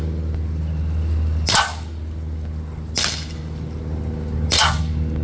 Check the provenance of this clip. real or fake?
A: real